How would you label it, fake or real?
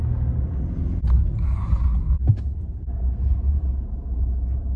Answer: real